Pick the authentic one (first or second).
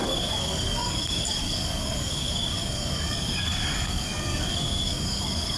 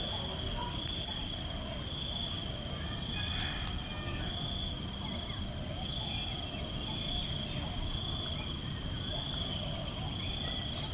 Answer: second